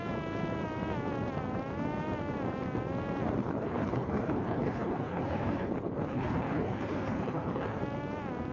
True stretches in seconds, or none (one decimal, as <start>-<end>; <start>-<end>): 0.0-3.4; 7.8-8.5